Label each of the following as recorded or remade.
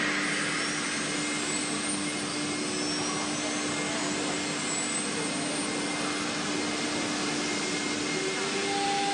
recorded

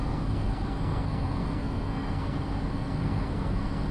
remade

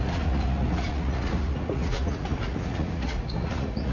remade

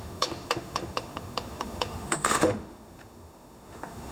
remade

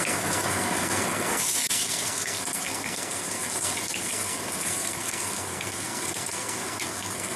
remade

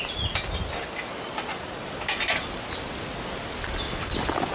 recorded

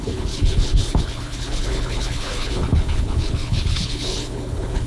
remade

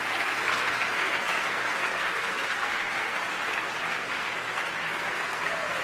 remade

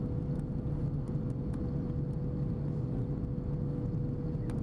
recorded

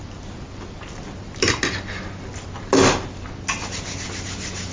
recorded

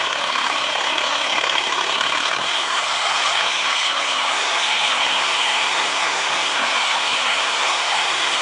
remade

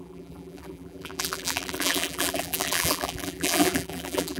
remade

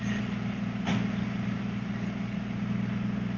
recorded